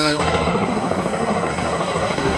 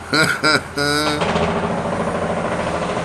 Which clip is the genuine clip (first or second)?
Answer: second